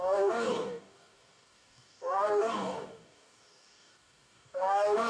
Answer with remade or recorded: remade